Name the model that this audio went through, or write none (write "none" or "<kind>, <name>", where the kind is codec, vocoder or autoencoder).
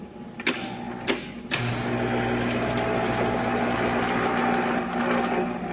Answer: none